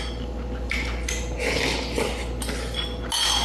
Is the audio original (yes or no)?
yes